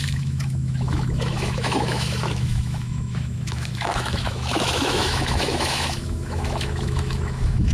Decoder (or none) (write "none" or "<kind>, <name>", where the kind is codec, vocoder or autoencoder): autoencoder, DAC-VAE